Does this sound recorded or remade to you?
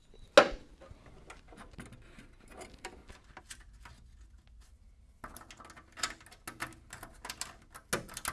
recorded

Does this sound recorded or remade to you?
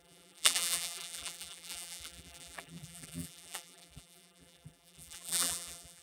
remade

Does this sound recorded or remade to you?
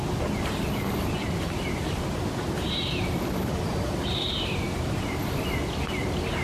remade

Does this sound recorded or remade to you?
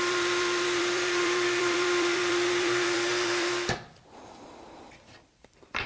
remade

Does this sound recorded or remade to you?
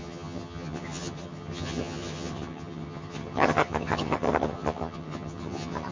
remade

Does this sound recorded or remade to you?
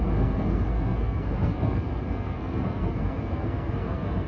remade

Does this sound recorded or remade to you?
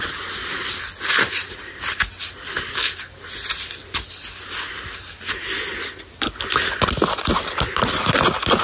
recorded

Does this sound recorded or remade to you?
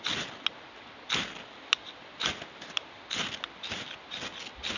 recorded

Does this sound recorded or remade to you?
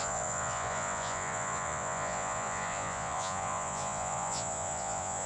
remade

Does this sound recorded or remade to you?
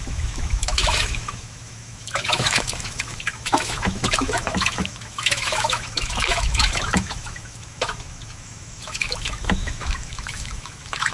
remade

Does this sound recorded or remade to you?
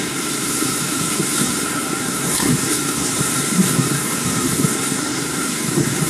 remade